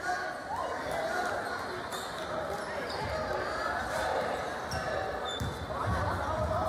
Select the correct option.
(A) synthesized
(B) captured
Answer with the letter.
B